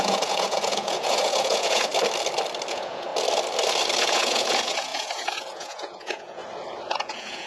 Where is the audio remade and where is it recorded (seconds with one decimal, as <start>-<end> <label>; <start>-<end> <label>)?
0.0-1.9 remade; 1.9-2.7 recorded; 2.7-3.1 remade; 3.1-4.0 recorded; 4.0-6.4 remade; 6.4-6.9 recorded; 6.9-7.5 remade